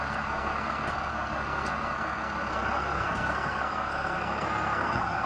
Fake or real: fake